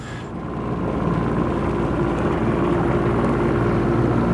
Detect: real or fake real